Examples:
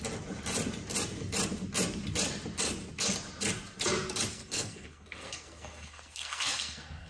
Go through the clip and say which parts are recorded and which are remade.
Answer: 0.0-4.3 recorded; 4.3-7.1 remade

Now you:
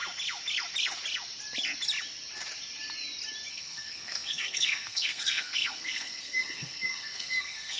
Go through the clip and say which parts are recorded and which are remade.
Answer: 0.0-3.5 recorded; 3.5-7.8 remade

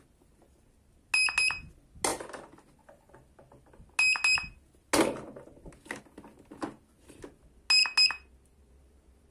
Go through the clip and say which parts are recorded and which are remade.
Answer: 0.0-9.3 recorded